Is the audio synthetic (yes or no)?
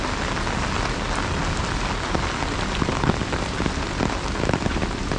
no